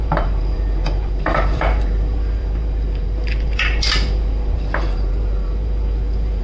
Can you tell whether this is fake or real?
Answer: fake